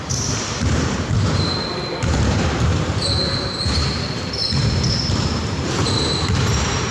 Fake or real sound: fake